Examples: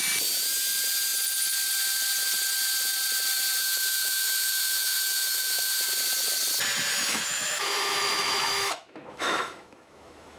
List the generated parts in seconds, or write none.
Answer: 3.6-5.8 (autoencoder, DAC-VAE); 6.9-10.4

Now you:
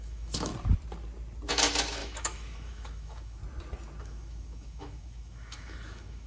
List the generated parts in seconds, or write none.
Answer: 0.0-0.5 (autoencoder, DAC-VAE); 1.5-3.4; 4.0-6.3

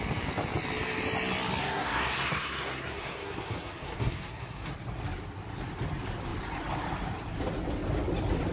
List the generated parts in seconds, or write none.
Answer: 1.6-4.7 (codec, SNAC)

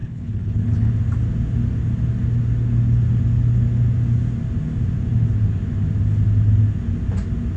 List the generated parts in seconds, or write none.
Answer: 0.0-0.9 (codec, HILCodec)

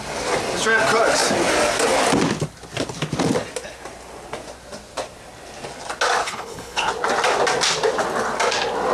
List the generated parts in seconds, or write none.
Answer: 6.2-6.9 (codec, HILCodec)